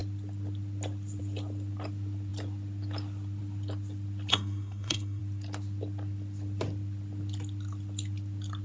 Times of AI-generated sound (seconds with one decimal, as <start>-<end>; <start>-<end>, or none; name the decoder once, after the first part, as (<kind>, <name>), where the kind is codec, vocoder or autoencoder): 4.3-5.2 (codec, SNAC)